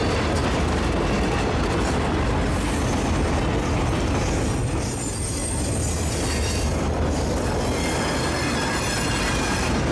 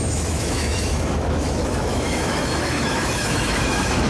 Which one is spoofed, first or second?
second